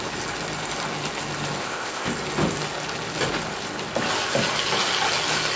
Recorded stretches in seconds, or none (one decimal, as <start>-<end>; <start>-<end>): 0.0-1.6; 2.1-5.6